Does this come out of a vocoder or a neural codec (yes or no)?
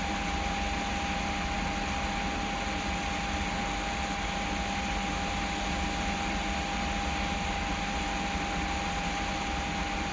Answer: no